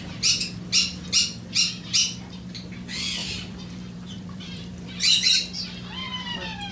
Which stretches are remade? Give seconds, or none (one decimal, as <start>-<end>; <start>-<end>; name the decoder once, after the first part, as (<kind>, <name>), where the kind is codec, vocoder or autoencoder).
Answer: 3.2-5.3 (vocoder, BigVGAN v2); 6.0-6.7